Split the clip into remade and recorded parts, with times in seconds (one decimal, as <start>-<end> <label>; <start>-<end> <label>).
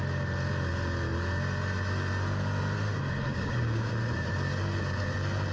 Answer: 0.0-3.3 recorded; 3.3-3.9 remade; 3.9-5.5 recorded